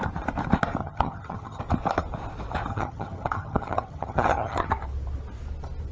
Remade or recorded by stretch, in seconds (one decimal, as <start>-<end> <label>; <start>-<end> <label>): 0.0-0.8 recorded; 0.8-1.6 remade; 1.6-2.7 recorded; 2.7-4.7 remade; 4.7-5.9 recorded